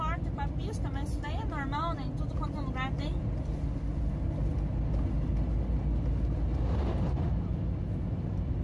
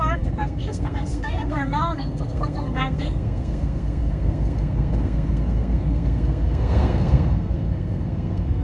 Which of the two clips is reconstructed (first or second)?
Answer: second